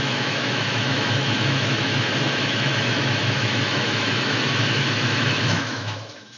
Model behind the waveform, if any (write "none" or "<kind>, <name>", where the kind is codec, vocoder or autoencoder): autoencoder, DAC-VAE